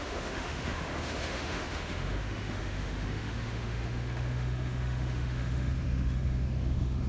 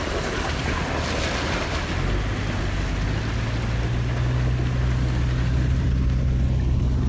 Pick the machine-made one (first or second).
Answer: first